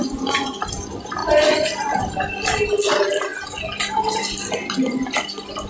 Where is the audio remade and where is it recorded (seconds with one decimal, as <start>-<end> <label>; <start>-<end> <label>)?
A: 0.0-0.6 remade; 0.6-5.7 recorded